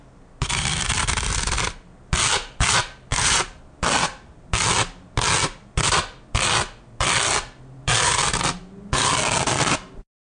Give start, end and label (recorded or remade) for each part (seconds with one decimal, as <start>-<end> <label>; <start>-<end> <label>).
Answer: 0.0-3.1 recorded; 3.1-3.6 remade; 3.6-10.2 recorded